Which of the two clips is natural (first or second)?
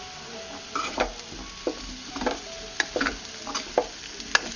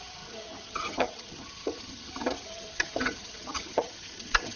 first